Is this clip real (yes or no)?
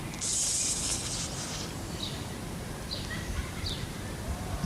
yes